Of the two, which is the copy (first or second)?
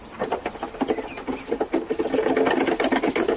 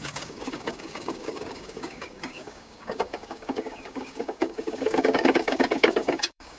second